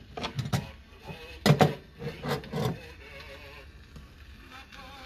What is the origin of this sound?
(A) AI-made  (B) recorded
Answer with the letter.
B